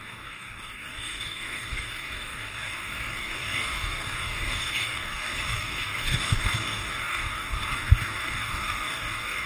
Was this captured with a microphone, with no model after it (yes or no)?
no